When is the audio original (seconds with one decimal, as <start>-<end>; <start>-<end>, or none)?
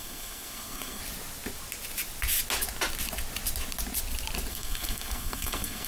1.0-4.5